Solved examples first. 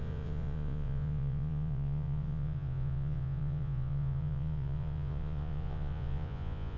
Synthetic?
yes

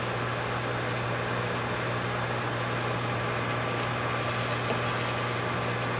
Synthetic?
no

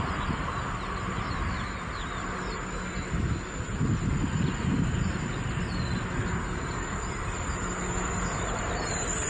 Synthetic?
no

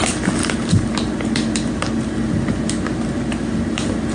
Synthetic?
no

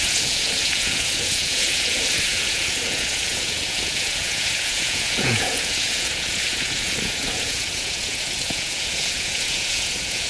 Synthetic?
yes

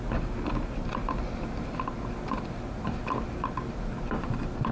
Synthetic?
no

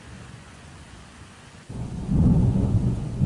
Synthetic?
yes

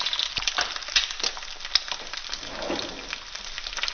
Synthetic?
no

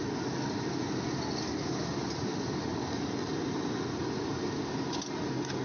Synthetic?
no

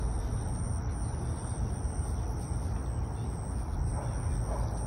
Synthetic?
no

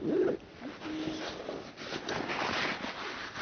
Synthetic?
no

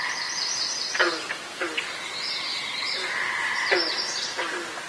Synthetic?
no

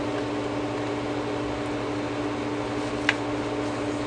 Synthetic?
no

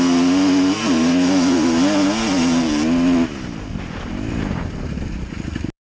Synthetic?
no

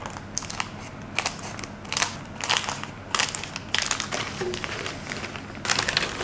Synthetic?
no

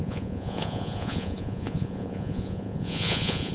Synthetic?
yes